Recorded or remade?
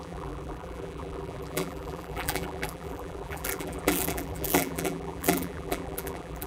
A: remade